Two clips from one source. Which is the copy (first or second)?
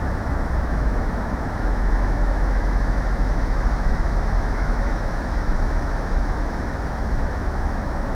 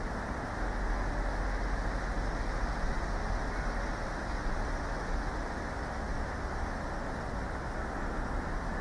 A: first